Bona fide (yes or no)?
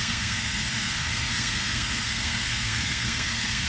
no